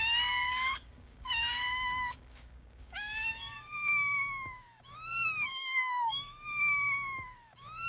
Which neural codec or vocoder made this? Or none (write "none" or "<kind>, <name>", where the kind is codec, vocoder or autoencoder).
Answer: codec, DAC